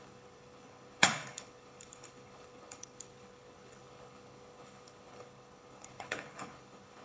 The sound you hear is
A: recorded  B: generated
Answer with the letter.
B